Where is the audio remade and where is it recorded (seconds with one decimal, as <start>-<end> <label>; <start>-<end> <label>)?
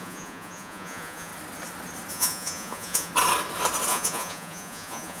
0.0-1.3 remade; 1.3-2.1 recorded; 2.1-3.1 remade; 3.1-3.9 recorded; 3.9-5.2 remade